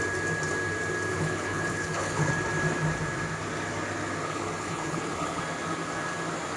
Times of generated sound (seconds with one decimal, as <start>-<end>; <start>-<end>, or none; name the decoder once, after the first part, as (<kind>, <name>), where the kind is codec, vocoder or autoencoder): 1.1-2.3 (codec, HILCodec); 4.2-5.4